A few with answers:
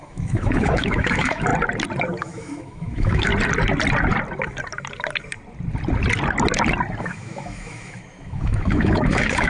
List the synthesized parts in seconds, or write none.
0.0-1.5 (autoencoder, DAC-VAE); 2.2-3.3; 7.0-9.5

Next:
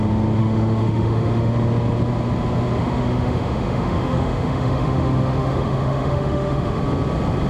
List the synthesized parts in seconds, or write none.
0.4-1.5 (autoencoder, DAC-VAE); 2.8-6.8

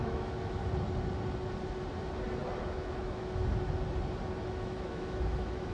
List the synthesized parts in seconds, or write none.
0.0-0.6 (autoencoder, DAC-VAE); 2.6-3.4; 4.5-5.7

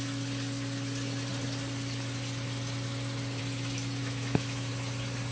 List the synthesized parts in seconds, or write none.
4.0-4.7 (autoencoder, DAC-VAE)